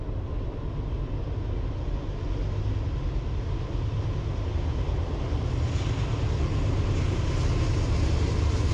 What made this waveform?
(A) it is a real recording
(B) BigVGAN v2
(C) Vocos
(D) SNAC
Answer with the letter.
A